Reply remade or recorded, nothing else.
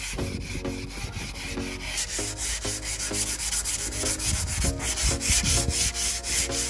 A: recorded